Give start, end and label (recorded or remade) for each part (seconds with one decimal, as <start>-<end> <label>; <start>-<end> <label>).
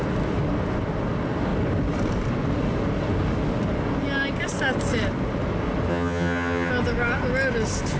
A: 0.0-5.9 recorded; 5.9-6.7 remade; 6.7-8.0 recorded